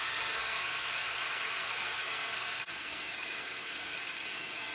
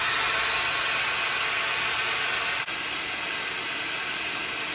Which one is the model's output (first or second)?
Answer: first